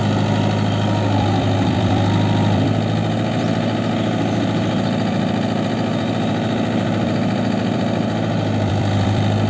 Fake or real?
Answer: fake